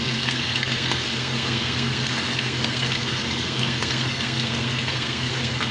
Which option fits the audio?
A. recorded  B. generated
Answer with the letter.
B